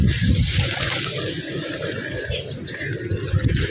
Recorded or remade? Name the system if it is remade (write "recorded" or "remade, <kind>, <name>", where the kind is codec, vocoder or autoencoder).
recorded